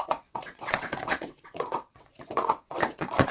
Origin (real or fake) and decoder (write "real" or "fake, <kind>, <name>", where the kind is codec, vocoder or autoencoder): fake, vocoder, WaveNeXt